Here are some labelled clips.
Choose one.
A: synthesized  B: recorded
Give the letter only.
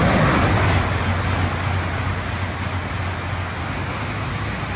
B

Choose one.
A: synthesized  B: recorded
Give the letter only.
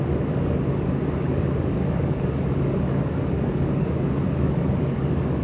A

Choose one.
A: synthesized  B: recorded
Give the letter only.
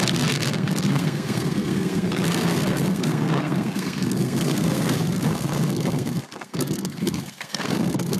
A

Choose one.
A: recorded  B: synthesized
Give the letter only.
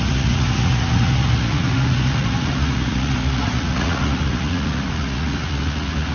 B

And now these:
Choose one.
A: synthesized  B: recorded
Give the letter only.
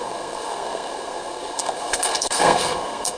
A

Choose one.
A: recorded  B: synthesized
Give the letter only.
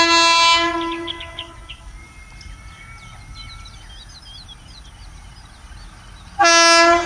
A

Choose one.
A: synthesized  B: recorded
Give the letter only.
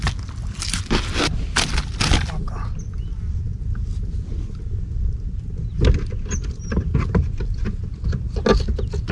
B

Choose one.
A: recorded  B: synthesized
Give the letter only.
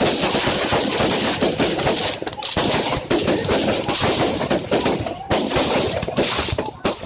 A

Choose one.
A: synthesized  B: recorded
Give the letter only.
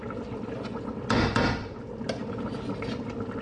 B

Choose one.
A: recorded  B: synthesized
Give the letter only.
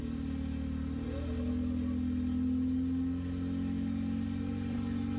A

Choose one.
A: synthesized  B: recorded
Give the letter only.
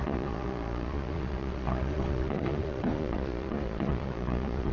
A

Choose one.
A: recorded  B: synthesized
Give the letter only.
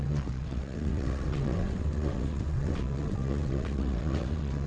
B